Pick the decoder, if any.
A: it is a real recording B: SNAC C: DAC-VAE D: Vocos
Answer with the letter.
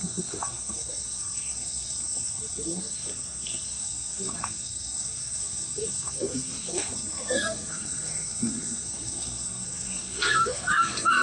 B